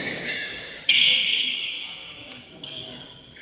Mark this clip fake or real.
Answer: fake